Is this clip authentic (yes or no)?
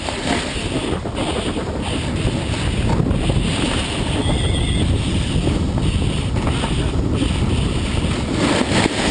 yes